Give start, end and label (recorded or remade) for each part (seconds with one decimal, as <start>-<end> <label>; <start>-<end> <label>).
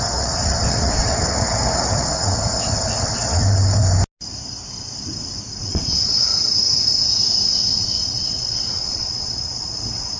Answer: 0.0-3.8 remade; 3.8-5.6 recorded; 5.6-6.3 remade; 6.3-7.5 recorded; 7.5-10.2 remade